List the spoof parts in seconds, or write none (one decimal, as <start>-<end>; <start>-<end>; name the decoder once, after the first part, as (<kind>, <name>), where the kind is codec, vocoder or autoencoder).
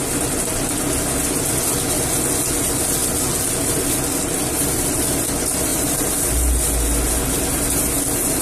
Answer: none